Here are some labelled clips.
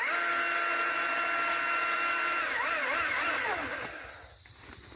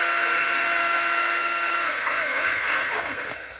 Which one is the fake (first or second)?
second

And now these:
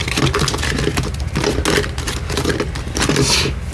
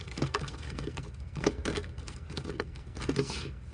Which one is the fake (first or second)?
second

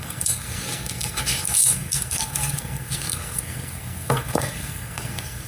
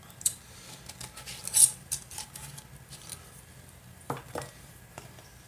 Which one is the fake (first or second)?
first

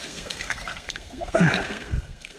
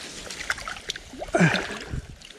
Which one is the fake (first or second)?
first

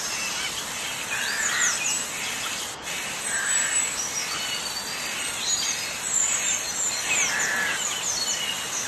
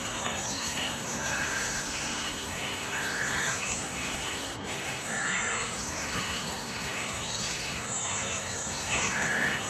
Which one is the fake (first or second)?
second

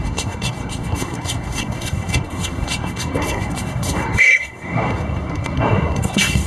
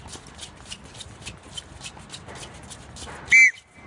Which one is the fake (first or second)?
first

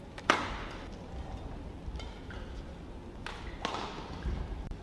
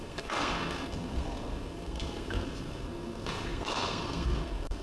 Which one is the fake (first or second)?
second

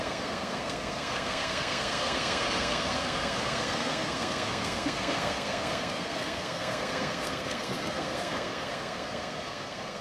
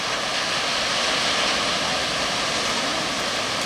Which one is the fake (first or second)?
first